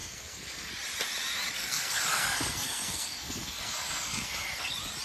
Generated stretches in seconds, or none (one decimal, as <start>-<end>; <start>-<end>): 0.0-0.7; 1.6-4.6

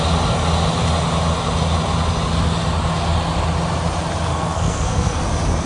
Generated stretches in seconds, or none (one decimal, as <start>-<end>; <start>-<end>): 4.3-5.2

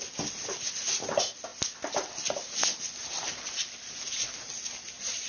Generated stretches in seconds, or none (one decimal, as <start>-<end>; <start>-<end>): none

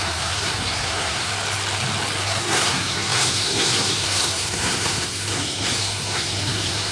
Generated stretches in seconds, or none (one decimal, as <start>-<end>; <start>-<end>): 0.0-1.3; 2.2-6.9

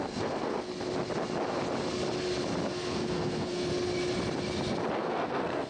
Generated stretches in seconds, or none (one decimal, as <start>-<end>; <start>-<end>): 0.0-0.7; 2.7-3.7; 5.0-5.7

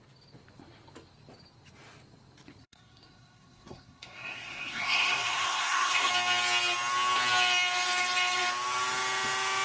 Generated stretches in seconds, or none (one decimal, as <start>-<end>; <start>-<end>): 2.6-6.1

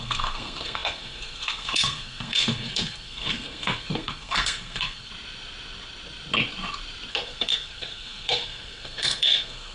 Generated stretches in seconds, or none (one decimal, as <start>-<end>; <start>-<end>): 0.0-5.1; 7.1-9.7

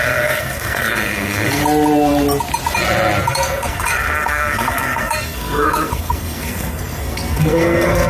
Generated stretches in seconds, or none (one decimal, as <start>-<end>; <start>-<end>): 0.0-1.6; 3.3-8.1